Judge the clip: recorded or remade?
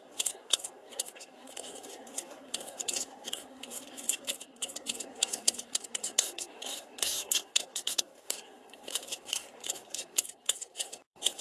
remade